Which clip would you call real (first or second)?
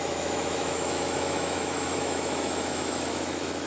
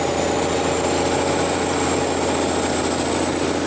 second